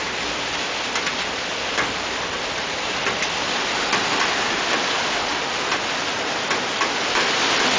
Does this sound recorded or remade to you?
recorded